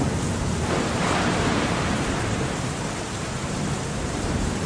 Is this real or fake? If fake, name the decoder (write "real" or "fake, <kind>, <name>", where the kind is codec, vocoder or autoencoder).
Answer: fake, vocoder, BigVGAN v2